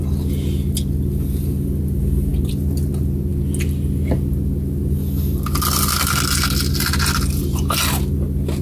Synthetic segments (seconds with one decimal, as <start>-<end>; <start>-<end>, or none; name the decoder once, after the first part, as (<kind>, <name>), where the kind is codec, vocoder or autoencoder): none